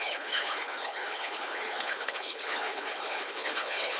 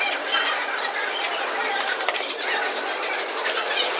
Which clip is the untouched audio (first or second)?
second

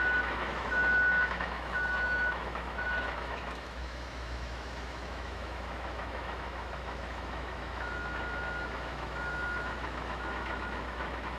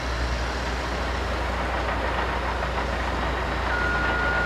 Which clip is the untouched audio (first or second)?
second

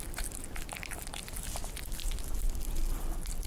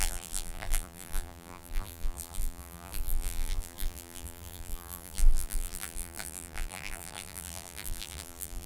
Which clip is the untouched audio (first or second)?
first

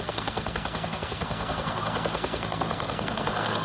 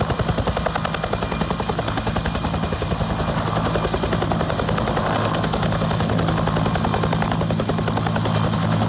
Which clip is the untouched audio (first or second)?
second